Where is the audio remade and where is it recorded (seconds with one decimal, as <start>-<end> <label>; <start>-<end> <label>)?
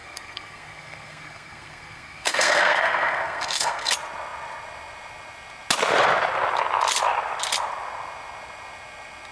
0.0-3.9 remade; 3.9-9.3 recorded